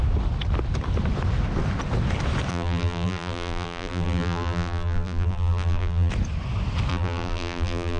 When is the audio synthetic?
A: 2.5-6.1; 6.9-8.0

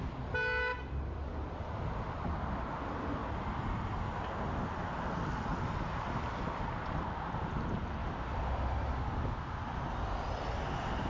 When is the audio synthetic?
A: 0.7-2.6

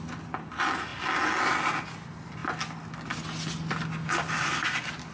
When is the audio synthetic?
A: none

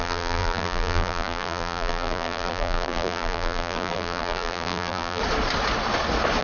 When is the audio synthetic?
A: 0.0-5.2

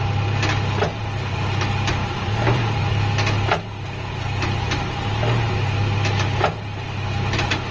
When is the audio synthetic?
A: 2.0-2.9

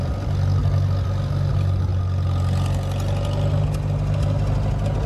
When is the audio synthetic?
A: 0.0-0.6; 1.5-1.9